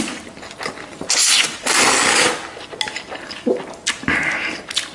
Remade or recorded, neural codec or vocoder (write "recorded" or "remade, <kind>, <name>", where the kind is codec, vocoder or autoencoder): recorded